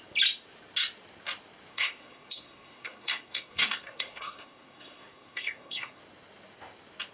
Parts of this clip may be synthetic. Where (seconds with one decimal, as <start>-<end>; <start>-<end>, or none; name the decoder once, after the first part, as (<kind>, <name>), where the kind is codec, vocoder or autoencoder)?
1.7-6.0 (codec, SNAC)